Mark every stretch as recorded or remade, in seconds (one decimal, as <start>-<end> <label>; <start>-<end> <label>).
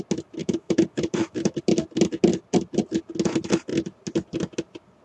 0.0-0.4 recorded; 0.4-1.6 remade; 1.6-5.0 recorded